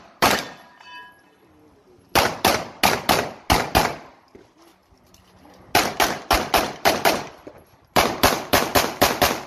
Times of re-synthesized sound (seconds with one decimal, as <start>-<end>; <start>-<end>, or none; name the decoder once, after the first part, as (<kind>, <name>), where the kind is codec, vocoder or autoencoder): 0.0-1.8 (vocoder, BigVGAN v2); 6.3-9.5